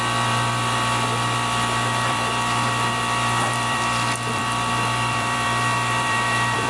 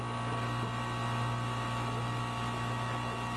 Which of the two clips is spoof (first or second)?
first